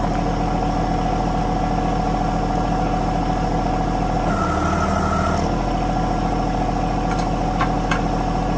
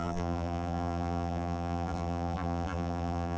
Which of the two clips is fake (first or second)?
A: second